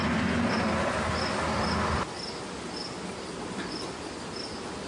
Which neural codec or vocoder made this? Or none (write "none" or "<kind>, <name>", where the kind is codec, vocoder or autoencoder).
none